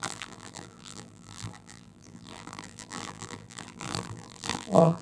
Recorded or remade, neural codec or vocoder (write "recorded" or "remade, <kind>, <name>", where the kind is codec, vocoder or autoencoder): remade, vocoder, BigVGAN v2